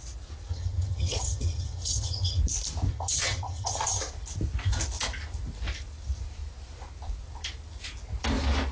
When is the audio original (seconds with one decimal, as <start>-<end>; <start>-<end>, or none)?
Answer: 0.0-0.5; 2.4-2.9; 4.0-8.7